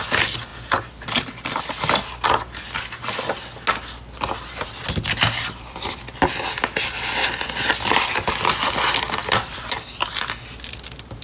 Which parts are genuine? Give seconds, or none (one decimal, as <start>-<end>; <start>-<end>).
0.0-11.2